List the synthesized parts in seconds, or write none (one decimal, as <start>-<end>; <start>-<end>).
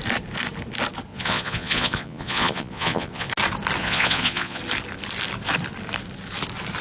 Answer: 1.1-3.3; 3.8-4.6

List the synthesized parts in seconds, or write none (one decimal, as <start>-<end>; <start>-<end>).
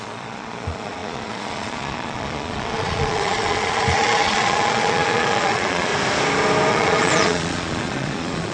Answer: 0.0-5.9; 6.7-8.5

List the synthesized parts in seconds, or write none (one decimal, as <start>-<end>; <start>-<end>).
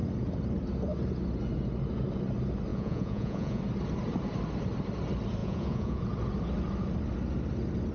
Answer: 2.7-3.6; 5.4-6.0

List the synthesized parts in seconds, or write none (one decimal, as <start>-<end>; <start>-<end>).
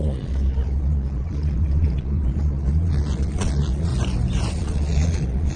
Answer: 0.0-3.9; 4.5-5.6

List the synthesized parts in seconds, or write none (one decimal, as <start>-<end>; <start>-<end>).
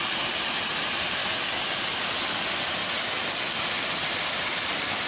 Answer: none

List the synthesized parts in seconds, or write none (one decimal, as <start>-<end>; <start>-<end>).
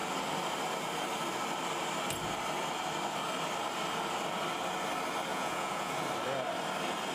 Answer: 5.3-5.9